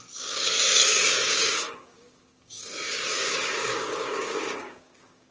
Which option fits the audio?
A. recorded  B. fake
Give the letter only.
B